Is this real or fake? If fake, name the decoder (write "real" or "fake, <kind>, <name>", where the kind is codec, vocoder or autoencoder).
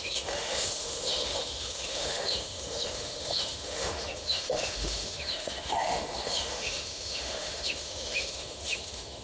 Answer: fake, autoencoder, DAC-VAE